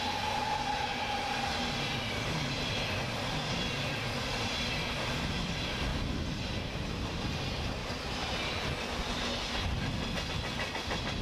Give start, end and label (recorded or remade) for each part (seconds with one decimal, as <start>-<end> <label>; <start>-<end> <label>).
0.0-11.2 recorded